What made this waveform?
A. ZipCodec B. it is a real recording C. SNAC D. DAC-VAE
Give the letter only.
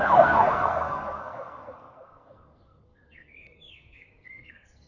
C